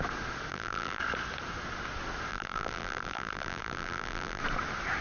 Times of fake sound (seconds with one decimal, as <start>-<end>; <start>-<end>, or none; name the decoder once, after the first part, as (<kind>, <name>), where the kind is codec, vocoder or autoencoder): 0.5-1.0 (vocoder, BigVGAN v2); 2.3-4.4

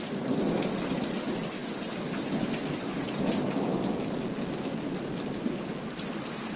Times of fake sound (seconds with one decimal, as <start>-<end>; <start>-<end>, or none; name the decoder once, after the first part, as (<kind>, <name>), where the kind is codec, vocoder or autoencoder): none